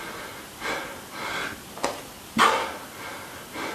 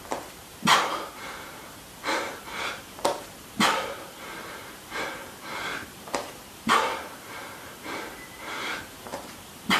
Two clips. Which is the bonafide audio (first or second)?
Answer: first